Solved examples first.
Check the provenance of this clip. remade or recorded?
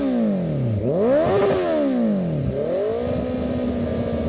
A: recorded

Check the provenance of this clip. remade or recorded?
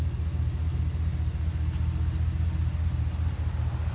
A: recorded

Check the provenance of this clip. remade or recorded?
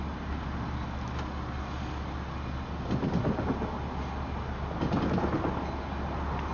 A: recorded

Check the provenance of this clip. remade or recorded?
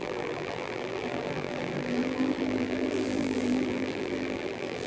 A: remade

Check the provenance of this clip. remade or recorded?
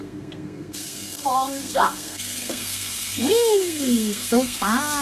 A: remade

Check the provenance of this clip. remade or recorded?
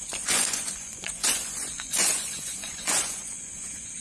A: remade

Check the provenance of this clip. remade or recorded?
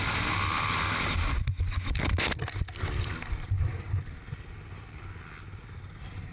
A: recorded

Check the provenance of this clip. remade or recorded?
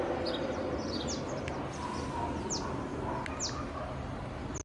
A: recorded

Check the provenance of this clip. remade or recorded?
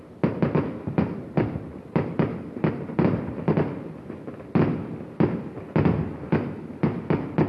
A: recorded